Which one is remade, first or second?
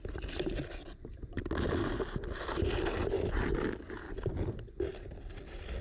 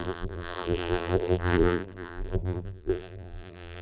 second